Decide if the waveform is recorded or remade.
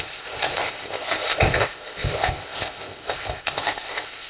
remade